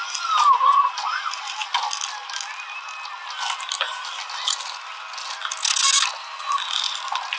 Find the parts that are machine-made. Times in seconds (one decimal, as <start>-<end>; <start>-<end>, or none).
none

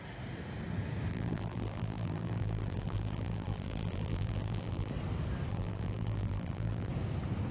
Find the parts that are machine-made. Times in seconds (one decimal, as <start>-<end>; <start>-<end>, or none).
1.1-4.9; 5.5-6.9

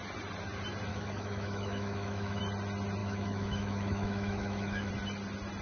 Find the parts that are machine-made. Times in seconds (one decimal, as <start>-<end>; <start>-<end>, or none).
0.9-2.4; 3.0-4.9

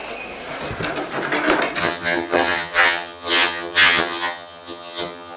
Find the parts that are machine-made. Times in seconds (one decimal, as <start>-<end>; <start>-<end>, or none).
1.8-5.4

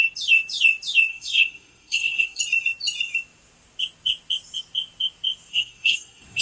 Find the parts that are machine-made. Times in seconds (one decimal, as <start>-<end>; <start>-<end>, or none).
1.1-2.4; 5.5-6.4

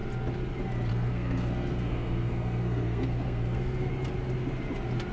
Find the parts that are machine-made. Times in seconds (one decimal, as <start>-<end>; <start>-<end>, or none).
0.9-3.9